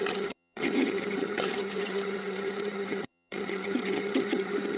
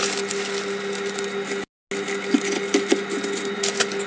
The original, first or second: second